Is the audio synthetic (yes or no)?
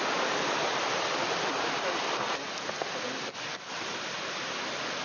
no